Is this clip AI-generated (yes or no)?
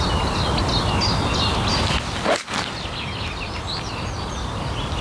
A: no